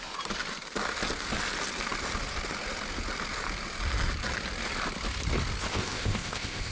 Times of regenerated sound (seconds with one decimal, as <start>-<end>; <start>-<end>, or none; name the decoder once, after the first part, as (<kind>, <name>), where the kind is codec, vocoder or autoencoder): 5.7-6.7 (codec, ZipCodec)